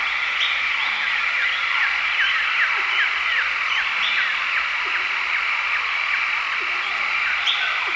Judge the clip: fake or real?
real